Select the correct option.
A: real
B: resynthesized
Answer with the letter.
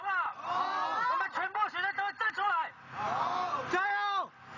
A